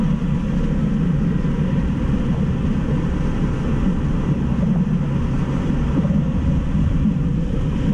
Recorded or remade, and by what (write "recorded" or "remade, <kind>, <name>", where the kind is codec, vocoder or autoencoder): recorded